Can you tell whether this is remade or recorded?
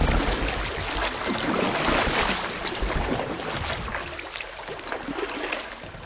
recorded